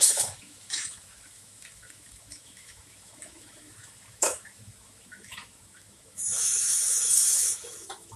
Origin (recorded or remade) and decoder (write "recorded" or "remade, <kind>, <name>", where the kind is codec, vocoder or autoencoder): remade, autoencoder, DAC-VAE